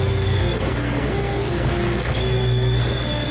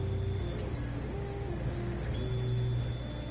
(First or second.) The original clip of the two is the second